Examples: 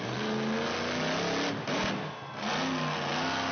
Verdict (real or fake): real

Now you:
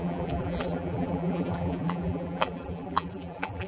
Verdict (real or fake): fake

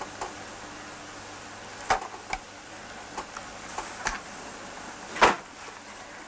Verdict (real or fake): real